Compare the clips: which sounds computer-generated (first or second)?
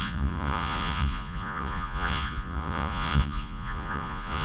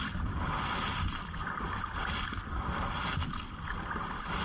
first